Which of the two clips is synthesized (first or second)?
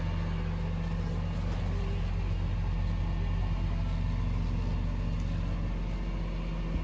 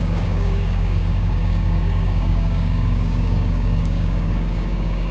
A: second